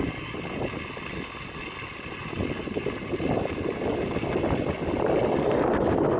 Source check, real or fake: real